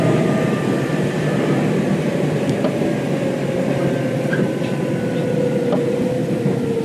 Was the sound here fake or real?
real